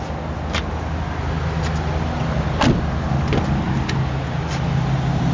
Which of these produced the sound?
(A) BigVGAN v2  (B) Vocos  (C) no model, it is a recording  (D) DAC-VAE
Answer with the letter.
C